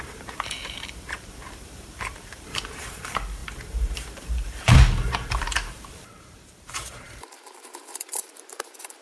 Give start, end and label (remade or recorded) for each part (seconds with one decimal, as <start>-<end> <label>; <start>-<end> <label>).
0.0-9.0 remade